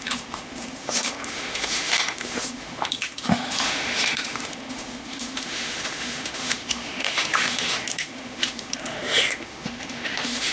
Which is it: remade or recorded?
remade